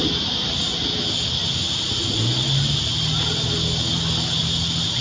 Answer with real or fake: real